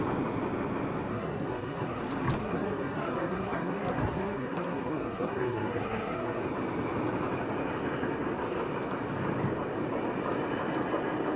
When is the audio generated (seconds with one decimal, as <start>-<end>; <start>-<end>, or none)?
1.1-2.0; 2.4-6.4